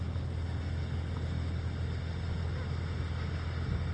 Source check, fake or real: real